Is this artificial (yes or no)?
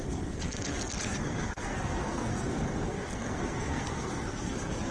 yes